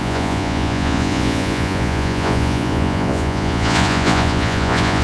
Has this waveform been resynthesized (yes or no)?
yes